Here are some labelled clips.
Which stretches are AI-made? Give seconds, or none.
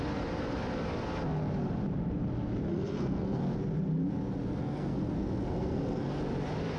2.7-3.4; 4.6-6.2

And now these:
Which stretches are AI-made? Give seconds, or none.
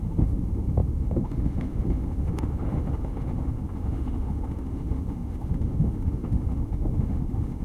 0.0-7.6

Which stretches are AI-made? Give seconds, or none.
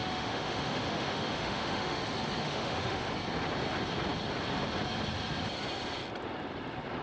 0.0-2.0; 2.4-3.1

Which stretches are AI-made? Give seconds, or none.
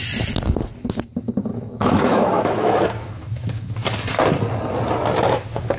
1.5-3.8; 5.2-5.8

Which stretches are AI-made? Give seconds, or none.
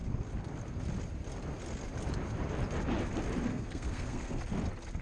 3.5-4.4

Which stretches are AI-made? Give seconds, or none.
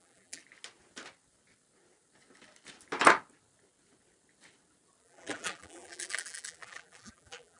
0.0-0.4; 5.0-7.6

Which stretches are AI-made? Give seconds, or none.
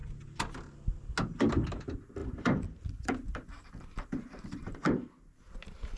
2.2-4.8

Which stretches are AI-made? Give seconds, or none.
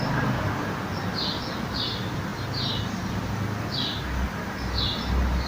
none